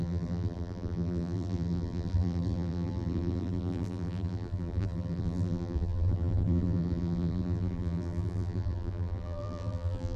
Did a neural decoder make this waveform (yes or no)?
yes